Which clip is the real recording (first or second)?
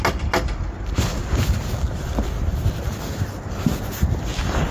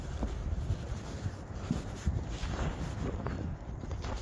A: first